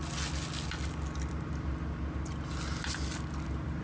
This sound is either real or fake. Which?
real